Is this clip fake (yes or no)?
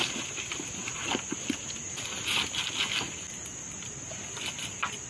no